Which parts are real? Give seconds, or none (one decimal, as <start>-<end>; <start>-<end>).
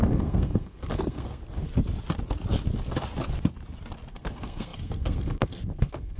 1.4-4.1